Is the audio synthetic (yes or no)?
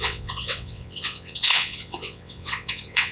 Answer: yes